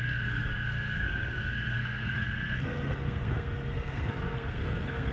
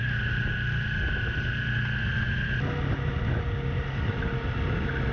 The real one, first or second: second